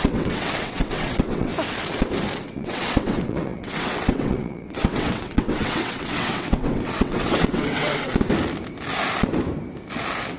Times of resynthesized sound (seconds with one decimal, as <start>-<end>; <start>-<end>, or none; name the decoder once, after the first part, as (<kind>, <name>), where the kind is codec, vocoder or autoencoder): 0.0-1.5 (vocoder, WaveNeXt); 2.4-8.1